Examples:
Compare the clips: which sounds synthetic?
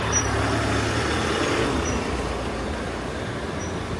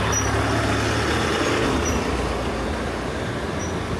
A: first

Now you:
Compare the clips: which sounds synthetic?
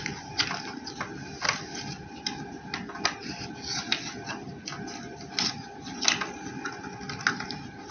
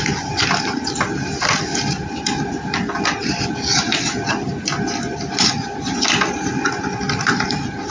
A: second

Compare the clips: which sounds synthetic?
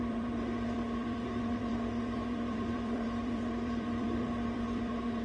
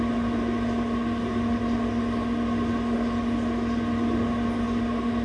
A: first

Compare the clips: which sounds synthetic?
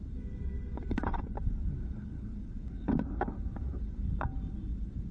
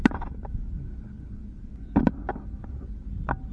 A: first